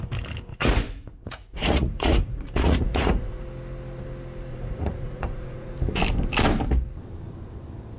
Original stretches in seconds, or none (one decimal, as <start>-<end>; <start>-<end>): 0.0-0.5; 3.4-4.5; 5.7-8.0